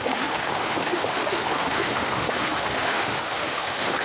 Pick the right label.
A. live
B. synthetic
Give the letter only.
B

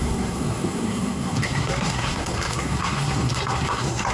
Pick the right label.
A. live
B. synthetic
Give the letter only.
B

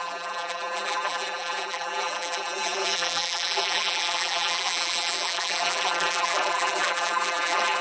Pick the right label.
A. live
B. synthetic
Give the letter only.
B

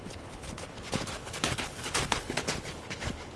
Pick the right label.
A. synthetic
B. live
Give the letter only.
A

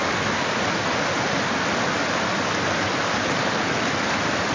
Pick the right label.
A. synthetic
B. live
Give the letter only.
B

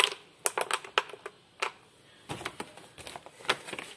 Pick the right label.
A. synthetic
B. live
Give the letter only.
B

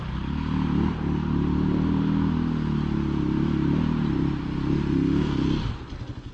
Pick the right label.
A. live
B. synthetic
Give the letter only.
A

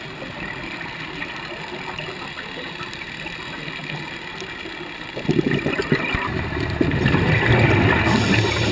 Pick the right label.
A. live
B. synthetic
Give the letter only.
A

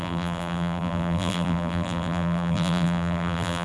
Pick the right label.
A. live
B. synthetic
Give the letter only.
B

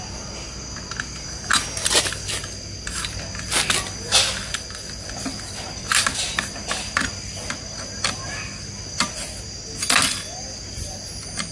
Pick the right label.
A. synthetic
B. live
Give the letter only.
B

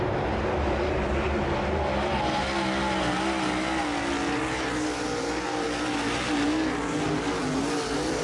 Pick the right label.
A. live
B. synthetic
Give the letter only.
A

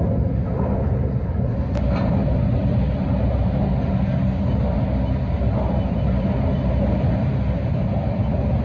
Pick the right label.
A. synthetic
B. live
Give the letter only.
B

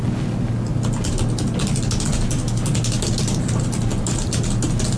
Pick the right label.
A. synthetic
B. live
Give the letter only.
B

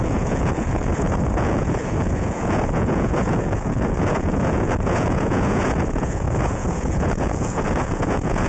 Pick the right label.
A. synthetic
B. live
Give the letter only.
A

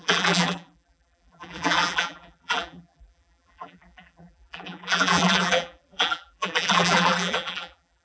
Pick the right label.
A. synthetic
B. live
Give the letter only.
A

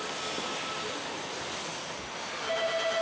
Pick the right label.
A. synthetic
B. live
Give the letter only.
B